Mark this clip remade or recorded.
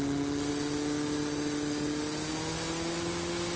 recorded